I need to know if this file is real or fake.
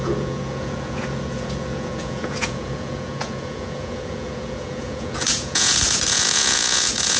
fake